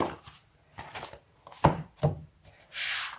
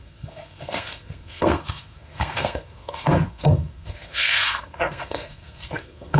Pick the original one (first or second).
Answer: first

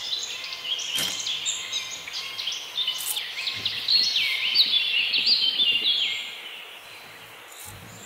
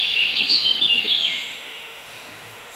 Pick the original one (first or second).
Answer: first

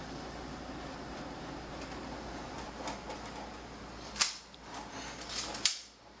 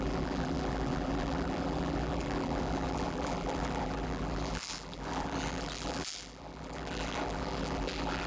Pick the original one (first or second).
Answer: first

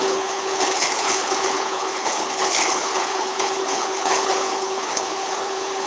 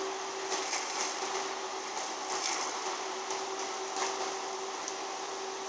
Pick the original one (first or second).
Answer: second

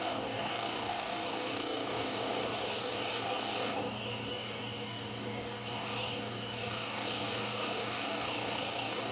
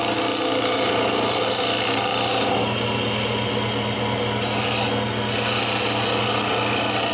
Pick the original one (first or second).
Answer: second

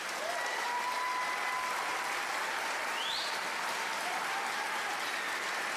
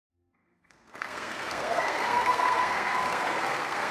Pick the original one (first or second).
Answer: first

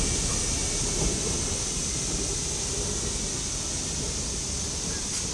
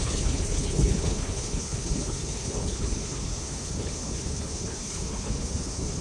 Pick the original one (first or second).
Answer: first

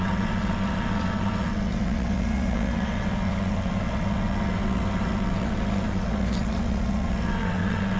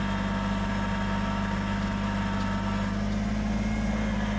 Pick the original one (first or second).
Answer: second